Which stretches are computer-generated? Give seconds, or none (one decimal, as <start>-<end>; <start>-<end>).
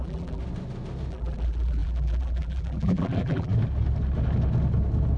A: 0.0-0.4; 1.1-3.5